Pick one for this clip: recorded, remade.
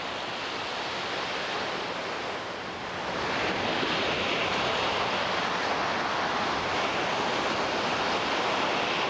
recorded